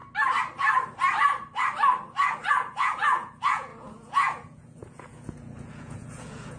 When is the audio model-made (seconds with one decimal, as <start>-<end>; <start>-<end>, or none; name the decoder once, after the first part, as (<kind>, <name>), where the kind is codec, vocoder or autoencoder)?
2.5-6.6 (vocoder, Vocos)